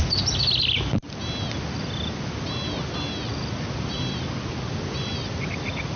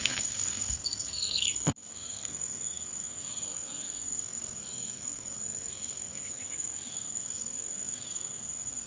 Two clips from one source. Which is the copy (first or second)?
second